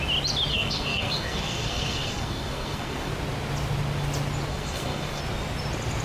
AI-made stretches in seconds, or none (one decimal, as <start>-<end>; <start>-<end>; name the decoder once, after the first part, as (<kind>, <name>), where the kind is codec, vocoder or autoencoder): 0.5-3.1 (codec, SNAC); 4.5-5.2